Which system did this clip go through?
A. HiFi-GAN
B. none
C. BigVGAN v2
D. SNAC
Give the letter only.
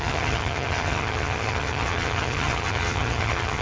A